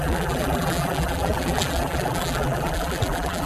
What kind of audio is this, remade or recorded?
remade